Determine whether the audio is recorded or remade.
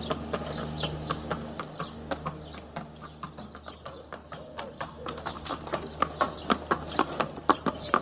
recorded